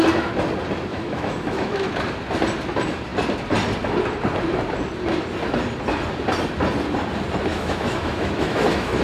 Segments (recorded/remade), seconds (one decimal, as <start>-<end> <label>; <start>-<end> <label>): 0.0-0.9 recorded; 0.9-1.9 remade; 1.9-7.5 recorded; 7.5-9.0 remade